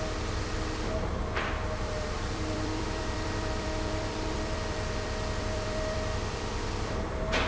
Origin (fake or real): fake